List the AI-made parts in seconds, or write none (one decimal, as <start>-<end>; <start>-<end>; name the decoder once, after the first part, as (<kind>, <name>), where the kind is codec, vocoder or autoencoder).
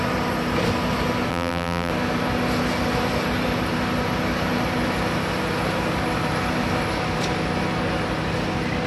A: 1.3-1.9 (vocoder, BigVGAN v2)